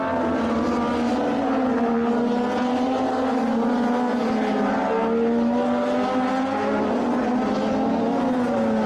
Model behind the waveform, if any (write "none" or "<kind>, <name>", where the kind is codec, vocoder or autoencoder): none